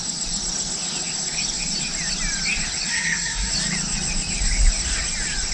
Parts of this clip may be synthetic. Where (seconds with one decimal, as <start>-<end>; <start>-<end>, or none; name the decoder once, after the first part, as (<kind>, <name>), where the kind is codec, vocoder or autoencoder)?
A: 2.9-3.5 (codec, SNAC)